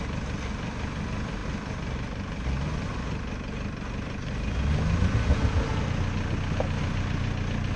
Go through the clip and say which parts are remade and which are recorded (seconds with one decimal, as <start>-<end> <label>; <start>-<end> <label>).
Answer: 0.0-7.8 recorded